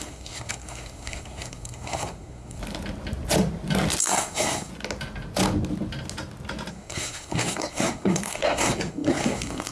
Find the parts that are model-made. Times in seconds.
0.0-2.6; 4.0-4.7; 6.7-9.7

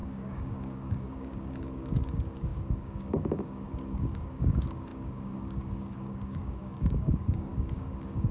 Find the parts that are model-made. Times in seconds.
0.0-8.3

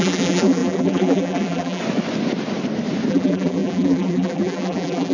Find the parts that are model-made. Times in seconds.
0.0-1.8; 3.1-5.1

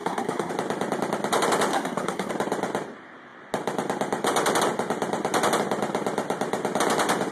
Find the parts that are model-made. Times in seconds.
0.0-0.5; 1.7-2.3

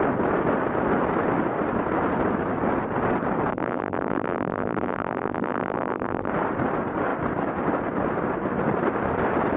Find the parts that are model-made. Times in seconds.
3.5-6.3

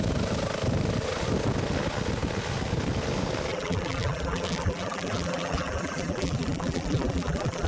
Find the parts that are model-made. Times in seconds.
3.5-7.7